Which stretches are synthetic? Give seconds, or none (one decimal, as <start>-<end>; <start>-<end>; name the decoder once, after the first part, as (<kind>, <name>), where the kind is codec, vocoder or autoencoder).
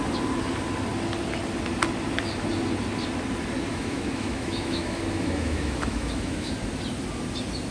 3.7-6.5 (autoencoder, DAC-VAE)